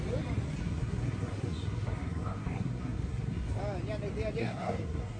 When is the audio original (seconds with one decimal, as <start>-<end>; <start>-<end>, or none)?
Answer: 0.0-0.6; 3.6-4.4

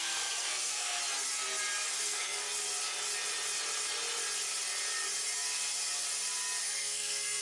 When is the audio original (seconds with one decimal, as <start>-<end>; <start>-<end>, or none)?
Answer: 1.0-1.9; 2.4-6.6

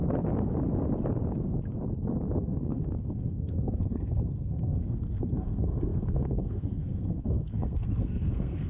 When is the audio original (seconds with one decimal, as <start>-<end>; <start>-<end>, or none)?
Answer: 0.0-2.4

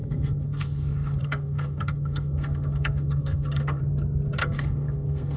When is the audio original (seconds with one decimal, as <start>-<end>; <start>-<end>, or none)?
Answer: 3.8-4.4

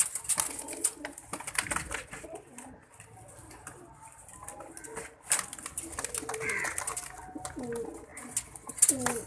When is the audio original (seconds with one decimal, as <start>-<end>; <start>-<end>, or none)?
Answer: 0.0-9.3